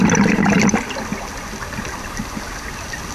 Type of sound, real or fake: real